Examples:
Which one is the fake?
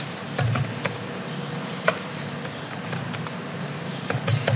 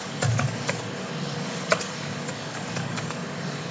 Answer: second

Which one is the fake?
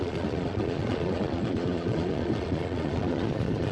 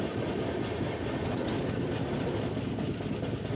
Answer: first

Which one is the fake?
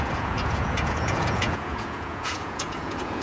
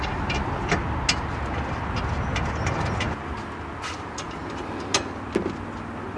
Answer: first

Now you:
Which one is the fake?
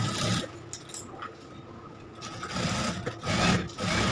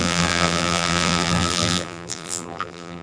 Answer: second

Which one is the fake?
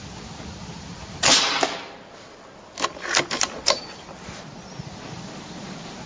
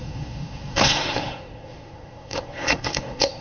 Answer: second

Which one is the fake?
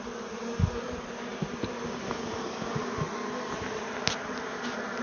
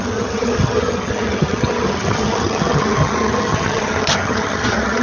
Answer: second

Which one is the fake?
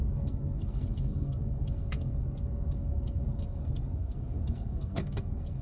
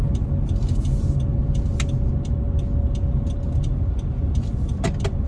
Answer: first